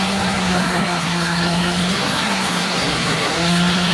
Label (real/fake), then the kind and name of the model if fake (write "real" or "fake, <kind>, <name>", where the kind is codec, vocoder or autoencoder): fake, codec, SNAC